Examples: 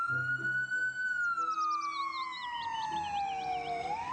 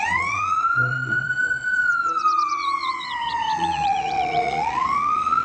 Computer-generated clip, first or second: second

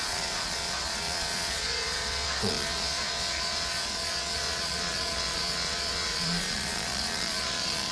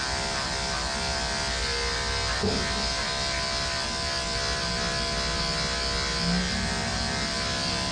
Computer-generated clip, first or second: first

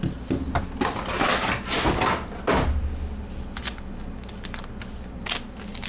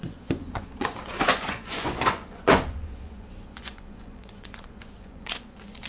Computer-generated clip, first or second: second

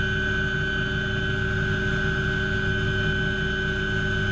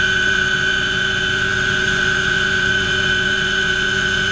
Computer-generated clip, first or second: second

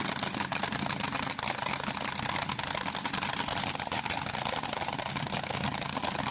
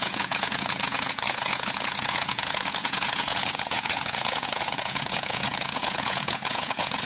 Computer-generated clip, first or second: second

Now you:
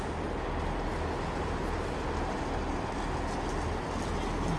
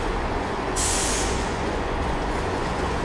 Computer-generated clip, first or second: second